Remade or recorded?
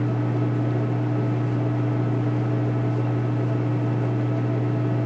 recorded